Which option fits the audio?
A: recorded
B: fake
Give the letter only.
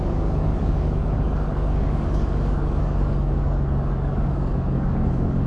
B